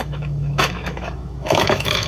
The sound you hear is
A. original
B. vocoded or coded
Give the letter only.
B